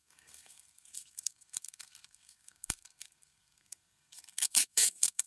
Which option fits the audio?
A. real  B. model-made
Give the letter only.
B